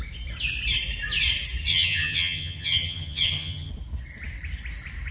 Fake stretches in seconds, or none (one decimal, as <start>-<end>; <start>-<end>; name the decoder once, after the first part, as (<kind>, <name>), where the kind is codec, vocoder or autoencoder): 1.7-3.7 (vocoder, HiFi-GAN)